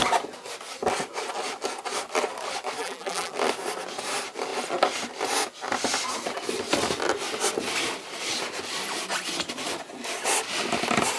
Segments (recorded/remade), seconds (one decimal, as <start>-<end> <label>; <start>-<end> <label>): 0.0-2.8 recorded; 2.8-3.3 remade; 3.3-11.2 recorded